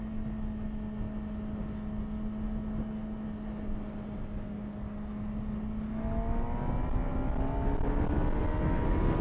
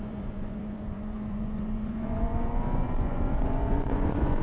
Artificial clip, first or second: second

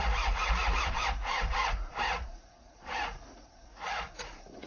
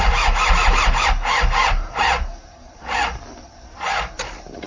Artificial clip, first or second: first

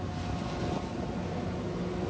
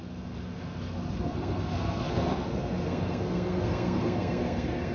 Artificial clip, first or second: second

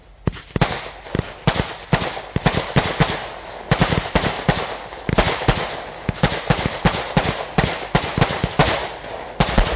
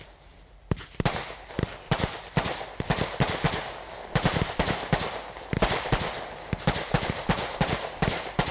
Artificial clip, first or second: second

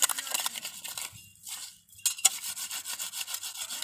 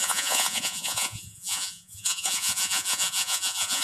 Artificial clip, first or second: second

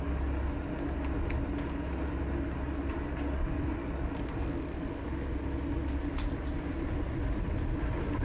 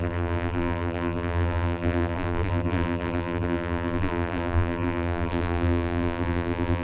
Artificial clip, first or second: second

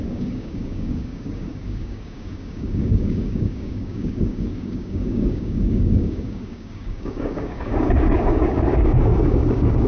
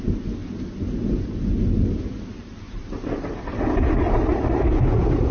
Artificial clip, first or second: first